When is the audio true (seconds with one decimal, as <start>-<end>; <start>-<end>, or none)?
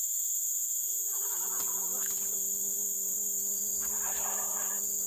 1.9-5.1